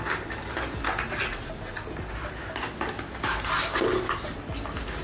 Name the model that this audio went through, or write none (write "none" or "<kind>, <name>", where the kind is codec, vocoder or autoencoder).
none